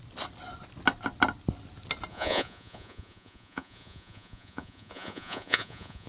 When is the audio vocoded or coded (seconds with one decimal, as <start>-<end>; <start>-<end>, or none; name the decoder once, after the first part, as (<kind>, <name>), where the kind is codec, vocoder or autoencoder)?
2.1-6.1 (vocoder, Vocos)